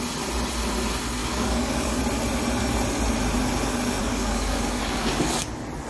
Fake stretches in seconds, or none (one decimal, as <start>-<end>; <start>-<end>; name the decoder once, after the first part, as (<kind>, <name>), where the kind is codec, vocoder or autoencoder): 1.2-2.0 (codec, DAC); 4.0-5.3